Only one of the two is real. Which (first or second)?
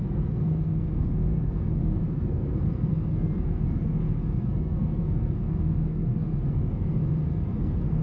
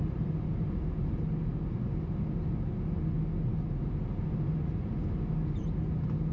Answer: second